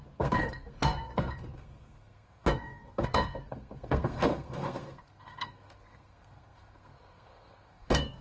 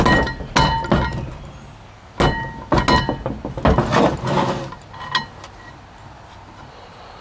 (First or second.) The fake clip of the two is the first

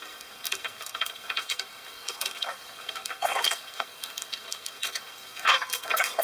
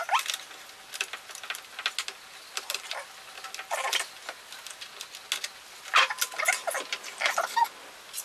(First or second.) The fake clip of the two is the first